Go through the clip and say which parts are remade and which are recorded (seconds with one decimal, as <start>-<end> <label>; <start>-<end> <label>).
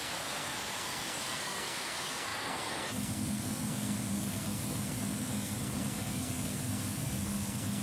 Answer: 0.0-7.8 remade